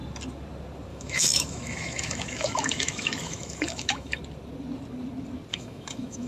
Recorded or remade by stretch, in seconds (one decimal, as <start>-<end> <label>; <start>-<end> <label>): 0.0-0.9 recorded; 0.9-4.2 remade; 4.2-5.5 recorded; 5.5-6.3 remade